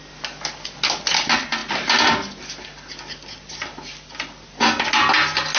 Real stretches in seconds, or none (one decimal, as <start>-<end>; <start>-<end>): 0.0-5.6